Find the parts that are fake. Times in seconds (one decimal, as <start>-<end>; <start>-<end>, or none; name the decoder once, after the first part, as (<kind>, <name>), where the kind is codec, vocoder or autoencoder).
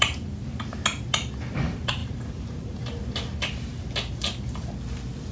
2.0-2.8 (vocoder, BigVGAN v2)